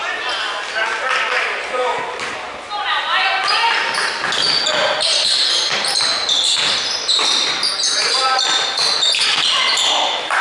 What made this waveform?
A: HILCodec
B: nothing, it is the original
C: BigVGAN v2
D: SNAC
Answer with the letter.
B